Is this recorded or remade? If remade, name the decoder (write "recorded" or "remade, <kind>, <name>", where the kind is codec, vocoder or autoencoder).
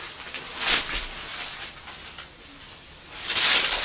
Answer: recorded